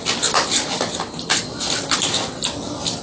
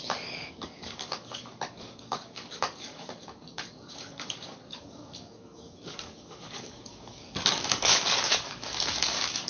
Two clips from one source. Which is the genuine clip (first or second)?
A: first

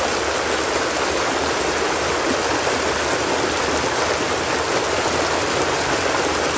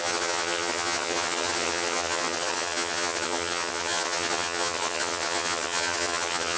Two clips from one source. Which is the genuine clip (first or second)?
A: first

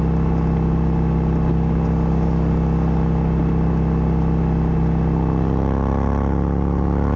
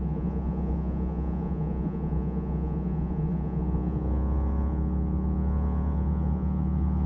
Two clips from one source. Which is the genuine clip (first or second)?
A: first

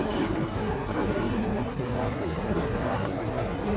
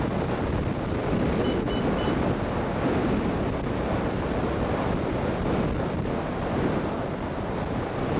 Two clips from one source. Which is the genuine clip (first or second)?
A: second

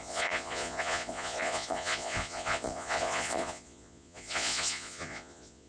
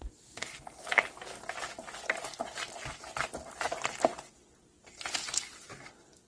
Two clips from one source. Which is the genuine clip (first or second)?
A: second